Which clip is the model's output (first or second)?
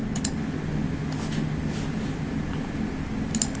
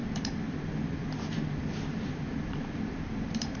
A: second